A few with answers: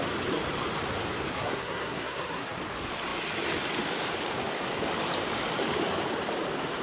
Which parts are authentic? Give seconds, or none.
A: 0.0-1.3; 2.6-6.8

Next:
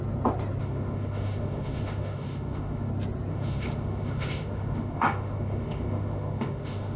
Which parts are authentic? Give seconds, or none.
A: 0.0-0.6; 2.9-3.3

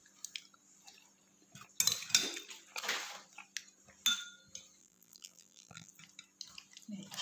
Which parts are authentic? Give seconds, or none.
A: 0.0-4.8; 5.9-7.2